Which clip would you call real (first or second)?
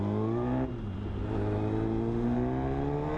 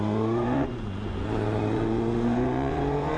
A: first